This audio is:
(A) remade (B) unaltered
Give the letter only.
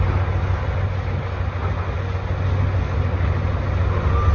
B